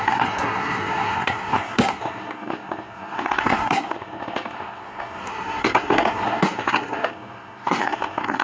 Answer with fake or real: fake